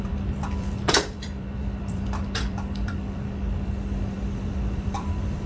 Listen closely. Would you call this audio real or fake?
fake